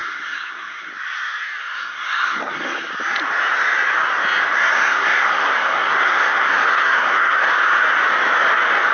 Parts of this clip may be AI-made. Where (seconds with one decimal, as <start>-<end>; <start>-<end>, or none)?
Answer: 0.0-0.9; 1.6-2.9; 4.6-7.5